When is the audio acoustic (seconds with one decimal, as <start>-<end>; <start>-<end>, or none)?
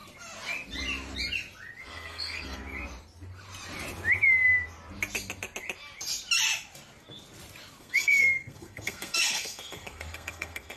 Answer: 0.0-1.8; 2.6-7.8